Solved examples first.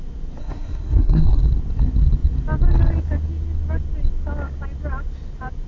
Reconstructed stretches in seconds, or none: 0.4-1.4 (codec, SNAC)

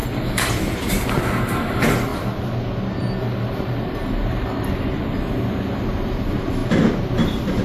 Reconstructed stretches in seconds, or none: 0.0-1.2 (vocoder, BigVGAN v2); 6.6-7.1

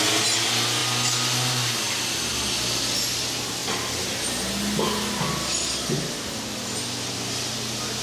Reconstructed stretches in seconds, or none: none